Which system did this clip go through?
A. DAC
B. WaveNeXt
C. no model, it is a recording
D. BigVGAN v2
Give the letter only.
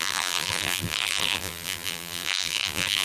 D